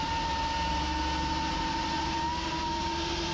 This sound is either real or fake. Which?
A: real